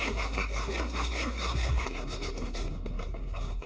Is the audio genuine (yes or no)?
no